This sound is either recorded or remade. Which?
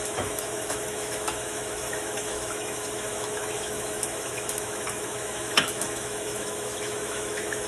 remade